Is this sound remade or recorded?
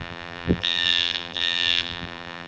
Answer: remade